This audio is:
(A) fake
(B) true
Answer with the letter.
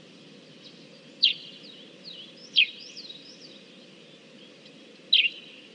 B